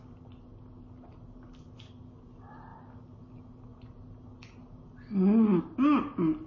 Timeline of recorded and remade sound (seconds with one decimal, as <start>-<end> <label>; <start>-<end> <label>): 0.0-6.5 recorded